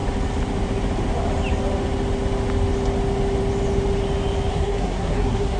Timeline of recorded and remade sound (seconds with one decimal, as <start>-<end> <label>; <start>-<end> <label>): 0.0-4.5 recorded; 4.5-5.6 remade